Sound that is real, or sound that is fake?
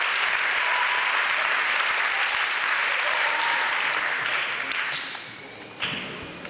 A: real